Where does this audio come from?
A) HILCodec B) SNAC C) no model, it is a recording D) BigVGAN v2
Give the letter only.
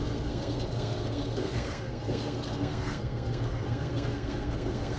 B